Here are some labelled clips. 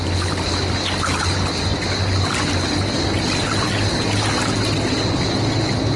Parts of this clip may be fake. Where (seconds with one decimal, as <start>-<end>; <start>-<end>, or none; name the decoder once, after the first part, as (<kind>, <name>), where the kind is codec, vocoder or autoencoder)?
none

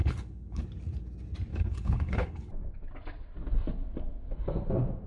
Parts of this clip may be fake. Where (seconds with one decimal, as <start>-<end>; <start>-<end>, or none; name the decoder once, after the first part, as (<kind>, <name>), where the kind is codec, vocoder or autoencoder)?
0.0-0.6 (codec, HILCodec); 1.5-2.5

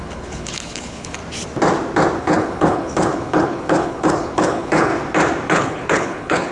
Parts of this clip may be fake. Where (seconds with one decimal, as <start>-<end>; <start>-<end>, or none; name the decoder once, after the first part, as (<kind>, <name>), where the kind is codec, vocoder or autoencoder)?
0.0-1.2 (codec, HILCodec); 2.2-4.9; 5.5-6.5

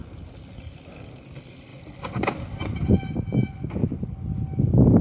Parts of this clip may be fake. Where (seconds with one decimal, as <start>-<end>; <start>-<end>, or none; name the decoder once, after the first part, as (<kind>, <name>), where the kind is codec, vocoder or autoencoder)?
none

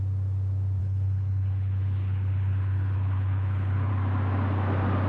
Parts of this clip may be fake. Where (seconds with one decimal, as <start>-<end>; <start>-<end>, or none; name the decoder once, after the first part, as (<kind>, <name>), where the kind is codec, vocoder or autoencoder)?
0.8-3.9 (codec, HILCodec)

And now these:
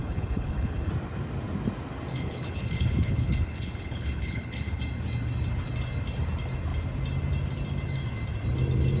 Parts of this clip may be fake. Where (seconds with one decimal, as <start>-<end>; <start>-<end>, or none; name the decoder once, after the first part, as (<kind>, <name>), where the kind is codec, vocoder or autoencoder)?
0.0-0.9 (codec, HILCodec); 2.1-4.8